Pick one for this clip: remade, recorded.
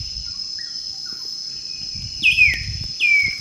recorded